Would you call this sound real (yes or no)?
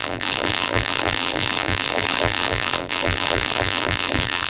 no